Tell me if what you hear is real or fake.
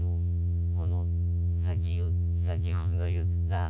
fake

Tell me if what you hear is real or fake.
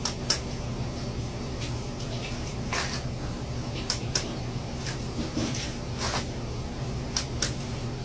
real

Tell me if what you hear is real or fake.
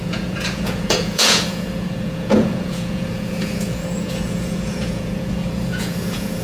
fake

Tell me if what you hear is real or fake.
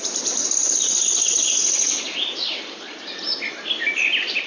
real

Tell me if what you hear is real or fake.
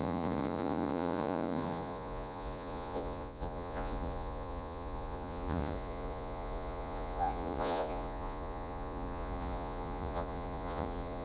fake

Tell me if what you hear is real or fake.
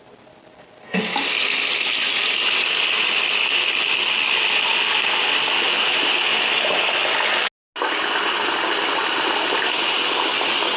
real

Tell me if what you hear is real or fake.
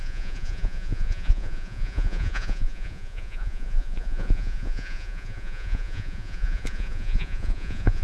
fake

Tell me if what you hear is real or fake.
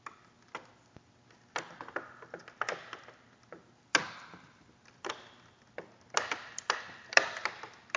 real